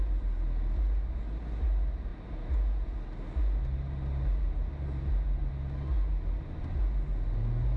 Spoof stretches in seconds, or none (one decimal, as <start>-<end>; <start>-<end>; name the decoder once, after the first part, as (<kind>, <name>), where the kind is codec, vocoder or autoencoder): none